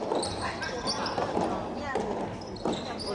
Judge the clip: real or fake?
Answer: real